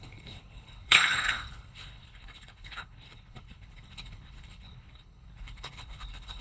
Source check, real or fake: fake